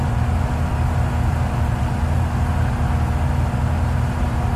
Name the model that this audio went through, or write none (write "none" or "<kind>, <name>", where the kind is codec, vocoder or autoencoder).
none